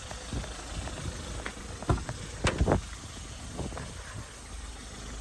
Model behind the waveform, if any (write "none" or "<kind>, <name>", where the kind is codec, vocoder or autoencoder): none